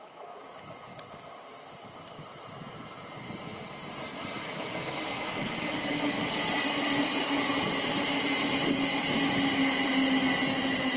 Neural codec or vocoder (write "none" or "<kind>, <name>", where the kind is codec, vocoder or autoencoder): none